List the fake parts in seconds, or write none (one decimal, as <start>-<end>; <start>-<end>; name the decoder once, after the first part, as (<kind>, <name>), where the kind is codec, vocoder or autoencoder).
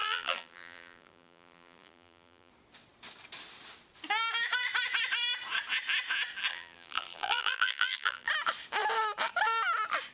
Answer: 0.0-2.5 (vocoder, BigVGAN v2); 6.5-8.3